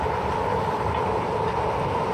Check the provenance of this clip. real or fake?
real